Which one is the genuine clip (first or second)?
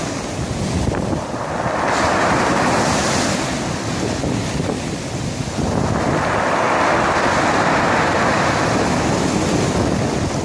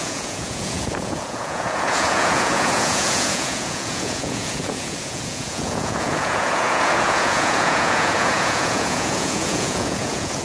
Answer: first